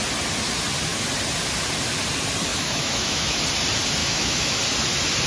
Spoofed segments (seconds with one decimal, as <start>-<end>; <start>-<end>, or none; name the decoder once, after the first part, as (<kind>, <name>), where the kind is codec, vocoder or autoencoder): 2.5-3.4 (autoencoder, DAC-VAE); 4.0-4.6

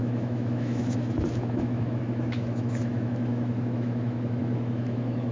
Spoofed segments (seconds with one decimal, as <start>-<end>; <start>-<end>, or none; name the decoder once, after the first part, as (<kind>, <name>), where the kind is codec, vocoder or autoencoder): 0.0-5.3 (autoencoder, DAC-VAE)

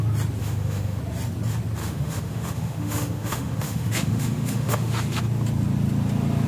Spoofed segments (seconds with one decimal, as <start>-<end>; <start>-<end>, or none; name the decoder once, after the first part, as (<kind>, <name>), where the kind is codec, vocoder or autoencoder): 0.4-1.0 (autoencoder, DAC-VAE); 1.8-5.2

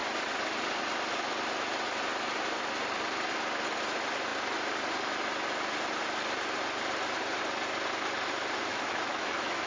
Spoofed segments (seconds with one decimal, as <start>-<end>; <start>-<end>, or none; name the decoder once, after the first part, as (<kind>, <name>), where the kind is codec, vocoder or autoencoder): 8.7-9.7 (autoencoder, DAC-VAE)